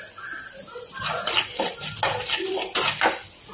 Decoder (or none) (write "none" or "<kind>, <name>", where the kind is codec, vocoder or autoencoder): none